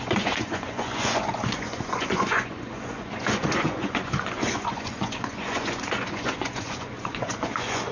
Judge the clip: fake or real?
fake